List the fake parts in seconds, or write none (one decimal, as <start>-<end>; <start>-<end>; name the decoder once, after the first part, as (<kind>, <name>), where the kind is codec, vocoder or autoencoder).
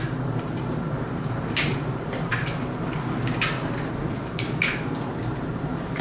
0.0-2.3 (vocoder, BigVGAN v2); 5.5-6.0